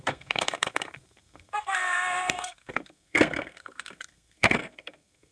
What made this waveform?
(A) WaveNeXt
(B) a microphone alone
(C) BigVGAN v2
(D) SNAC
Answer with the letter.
D